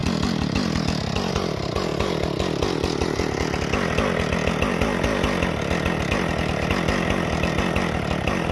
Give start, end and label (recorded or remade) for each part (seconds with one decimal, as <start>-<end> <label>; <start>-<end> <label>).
0.0-8.5 recorded

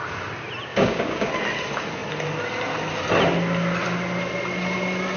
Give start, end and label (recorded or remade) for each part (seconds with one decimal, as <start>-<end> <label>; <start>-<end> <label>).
0.0-0.7 recorded; 0.7-1.3 remade; 1.3-5.2 recorded

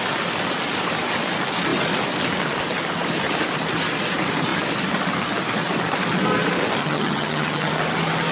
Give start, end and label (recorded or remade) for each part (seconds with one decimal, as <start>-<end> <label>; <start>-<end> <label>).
0.0-6.8 recorded; 6.8-7.7 remade; 7.7-8.3 recorded

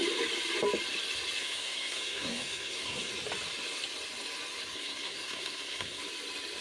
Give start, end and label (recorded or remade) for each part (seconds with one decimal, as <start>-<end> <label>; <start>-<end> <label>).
0.0-1.4 recorded; 1.4-3.1 remade; 3.1-4.7 recorded; 4.7-6.0 remade; 6.0-6.6 recorded